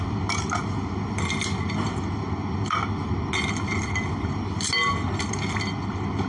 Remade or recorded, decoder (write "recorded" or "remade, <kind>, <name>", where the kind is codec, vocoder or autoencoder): recorded